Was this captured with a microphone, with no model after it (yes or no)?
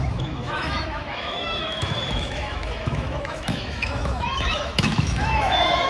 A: no